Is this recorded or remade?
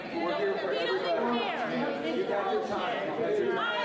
recorded